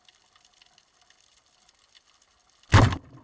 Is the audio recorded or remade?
recorded